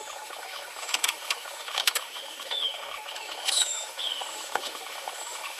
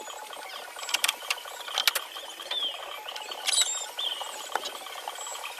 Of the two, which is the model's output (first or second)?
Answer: first